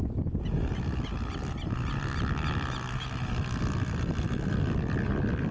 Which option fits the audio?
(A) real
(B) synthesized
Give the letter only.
A